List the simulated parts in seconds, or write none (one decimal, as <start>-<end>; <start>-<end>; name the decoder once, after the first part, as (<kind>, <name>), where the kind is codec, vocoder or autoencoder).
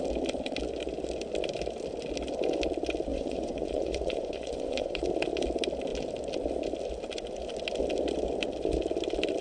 3.1-5.1 (vocoder, Vocos)